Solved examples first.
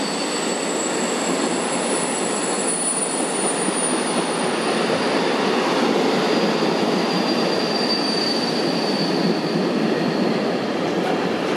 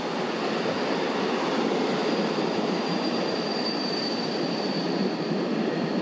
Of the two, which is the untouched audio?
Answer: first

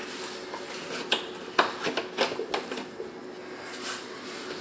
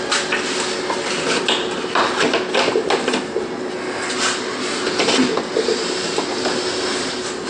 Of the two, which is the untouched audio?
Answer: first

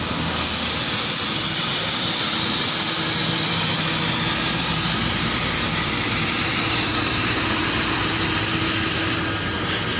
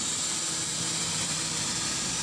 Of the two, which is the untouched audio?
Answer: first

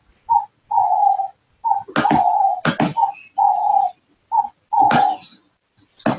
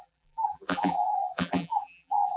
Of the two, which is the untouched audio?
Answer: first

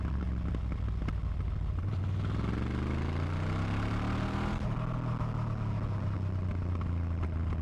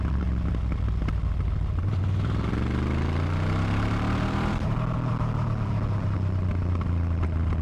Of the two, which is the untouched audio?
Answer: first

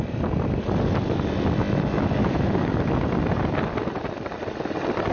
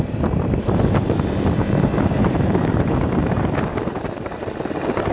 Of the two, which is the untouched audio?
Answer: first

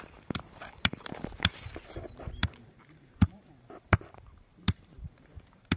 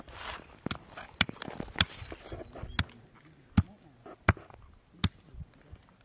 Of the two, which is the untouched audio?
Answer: second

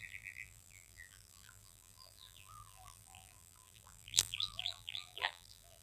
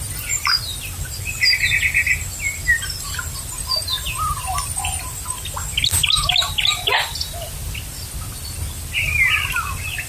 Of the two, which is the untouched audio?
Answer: second